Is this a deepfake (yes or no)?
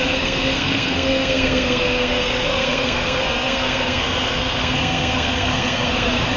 yes